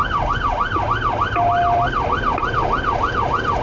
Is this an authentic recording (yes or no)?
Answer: yes